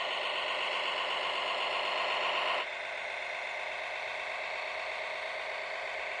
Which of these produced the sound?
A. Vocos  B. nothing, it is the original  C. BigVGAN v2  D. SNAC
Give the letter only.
B